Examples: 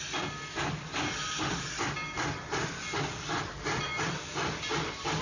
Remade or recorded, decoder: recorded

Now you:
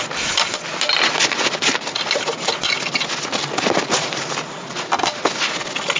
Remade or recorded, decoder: recorded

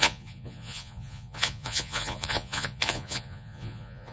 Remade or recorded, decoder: remade, vocoder, Vocos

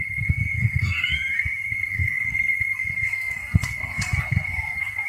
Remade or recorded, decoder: remade, codec, SNAC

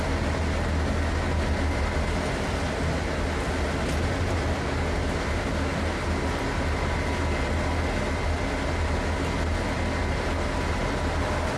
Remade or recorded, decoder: recorded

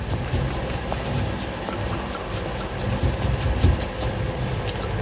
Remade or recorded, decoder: recorded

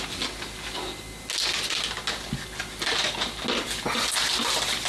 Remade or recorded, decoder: recorded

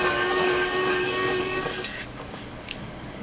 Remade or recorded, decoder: remade, codec, DAC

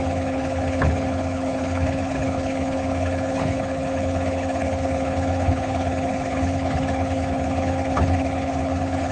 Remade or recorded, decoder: remade, codec, HILCodec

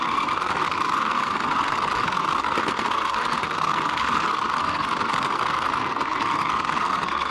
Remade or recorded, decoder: remade, codec, SNAC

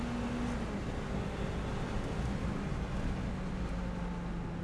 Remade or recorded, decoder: recorded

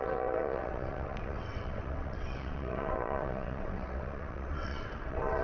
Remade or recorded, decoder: remade, vocoder, WaveNeXt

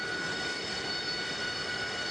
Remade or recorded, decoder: recorded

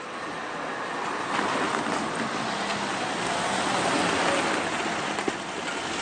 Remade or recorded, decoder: recorded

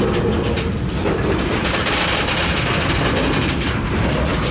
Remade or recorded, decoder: recorded